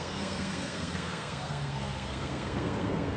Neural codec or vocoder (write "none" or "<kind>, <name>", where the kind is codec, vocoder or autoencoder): codec, SNAC